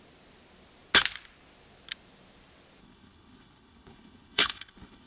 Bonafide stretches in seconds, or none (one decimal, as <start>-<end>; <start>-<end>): 0.0-2.8